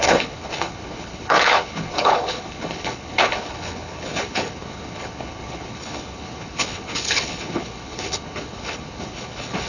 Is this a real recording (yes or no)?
no